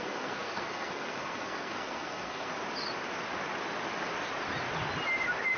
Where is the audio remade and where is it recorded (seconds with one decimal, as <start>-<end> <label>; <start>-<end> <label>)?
0.0-2.5 remade; 2.5-5.6 recorded